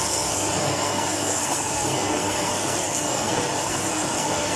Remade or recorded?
remade